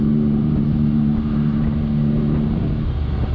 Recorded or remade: recorded